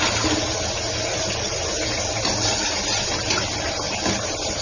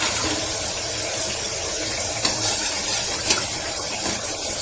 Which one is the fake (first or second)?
second